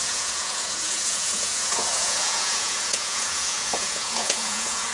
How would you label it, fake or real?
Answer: fake